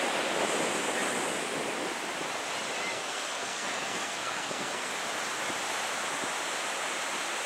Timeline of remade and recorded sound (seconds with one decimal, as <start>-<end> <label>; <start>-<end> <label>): 0.0-2.9 recorded; 2.9-4.9 remade; 4.9-7.5 recorded